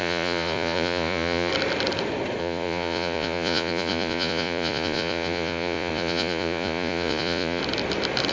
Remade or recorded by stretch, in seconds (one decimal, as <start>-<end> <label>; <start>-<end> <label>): 0.0-1.5 remade; 1.5-2.4 recorded; 2.4-7.6 remade; 7.6-8.3 recorded